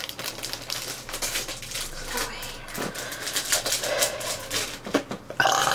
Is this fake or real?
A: real